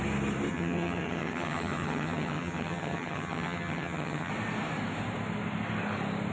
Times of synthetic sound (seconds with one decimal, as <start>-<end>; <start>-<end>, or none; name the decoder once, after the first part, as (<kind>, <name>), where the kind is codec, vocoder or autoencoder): 0.5-4.3 (vocoder, HiFi-GAN)